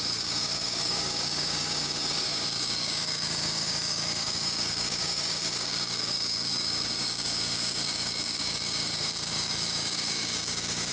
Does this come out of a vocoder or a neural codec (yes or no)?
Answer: yes